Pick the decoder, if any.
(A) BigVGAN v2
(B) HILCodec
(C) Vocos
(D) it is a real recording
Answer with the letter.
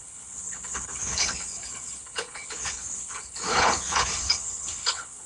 B